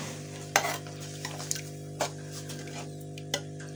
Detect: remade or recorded recorded